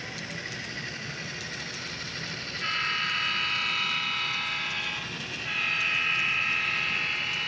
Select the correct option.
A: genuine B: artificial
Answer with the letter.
A